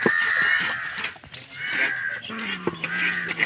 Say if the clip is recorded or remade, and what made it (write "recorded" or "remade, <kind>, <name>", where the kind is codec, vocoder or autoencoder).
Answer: recorded